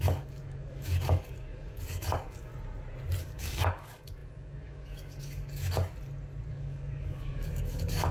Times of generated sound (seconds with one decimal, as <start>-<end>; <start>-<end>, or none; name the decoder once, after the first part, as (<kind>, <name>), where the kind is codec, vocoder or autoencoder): 0.0-2.5 (codec, DAC); 3.2-5.8; 6.5-8.1